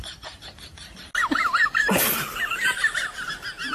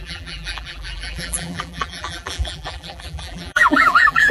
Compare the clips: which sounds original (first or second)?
first